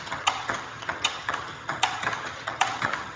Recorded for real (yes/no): no